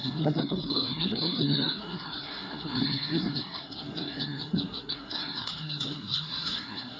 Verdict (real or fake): fake